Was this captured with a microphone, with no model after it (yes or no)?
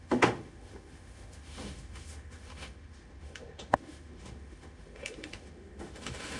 no